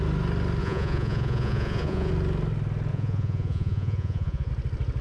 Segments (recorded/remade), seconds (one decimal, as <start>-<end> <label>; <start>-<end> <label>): 0.0-0.6 recorded; 0.6-2.1 remade; 2.1-2.9 recorded; 2.9-4.5 remade; 4.5-5.0 recorded